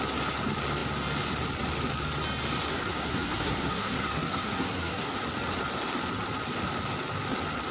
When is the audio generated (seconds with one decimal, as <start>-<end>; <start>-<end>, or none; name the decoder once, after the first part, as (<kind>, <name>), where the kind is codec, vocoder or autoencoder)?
2.7-5.1 (codec, SNAC)